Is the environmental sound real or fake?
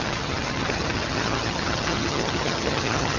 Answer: fake